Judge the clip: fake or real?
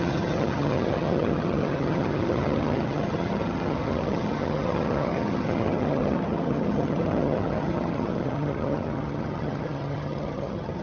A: fake